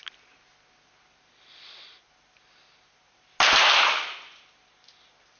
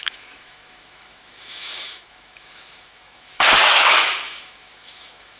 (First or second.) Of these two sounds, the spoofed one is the second